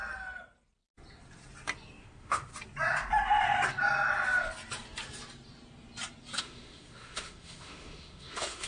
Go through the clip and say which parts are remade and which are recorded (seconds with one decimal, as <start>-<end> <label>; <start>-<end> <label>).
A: 0.0-2.0 recorded; 2.0-2.5 remade; 2.5-6.4 recorded; 6.4-8.7 remade